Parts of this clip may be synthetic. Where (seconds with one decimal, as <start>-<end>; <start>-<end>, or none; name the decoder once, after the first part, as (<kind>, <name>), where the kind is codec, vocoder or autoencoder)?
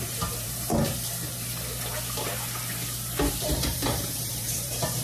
0.0-0.7 (vocoder, BigVGAN v2); 3.3-5.0